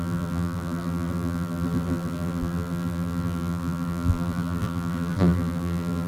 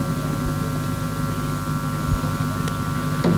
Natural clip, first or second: second